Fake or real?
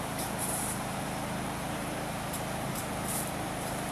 fake